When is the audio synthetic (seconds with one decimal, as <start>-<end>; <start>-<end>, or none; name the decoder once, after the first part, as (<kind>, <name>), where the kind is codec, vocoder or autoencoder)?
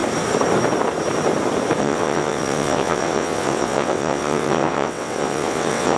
1.8-6.0 (vocoder, WaveNeXt)